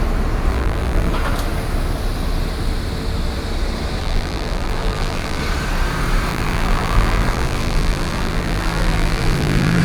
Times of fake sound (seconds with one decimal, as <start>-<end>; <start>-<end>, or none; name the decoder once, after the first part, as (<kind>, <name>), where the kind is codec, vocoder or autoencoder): 0.5-1.1 (vocoder, BigVGAN v2); 4.0-5.4; 6.3-9.8